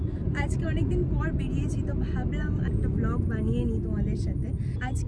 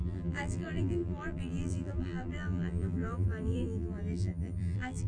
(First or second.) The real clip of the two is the first